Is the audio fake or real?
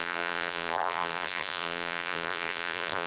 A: fake